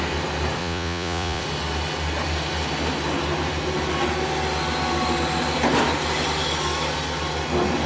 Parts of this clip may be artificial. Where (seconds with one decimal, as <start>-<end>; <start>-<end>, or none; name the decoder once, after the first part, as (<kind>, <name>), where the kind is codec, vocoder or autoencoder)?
0.6-1.4 (vocoder, Vocos)